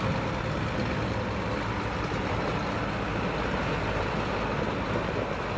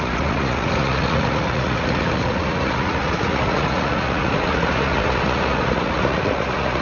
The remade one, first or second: second